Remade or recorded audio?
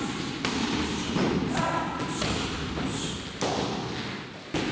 recorded